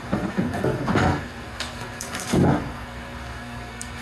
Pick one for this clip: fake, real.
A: fake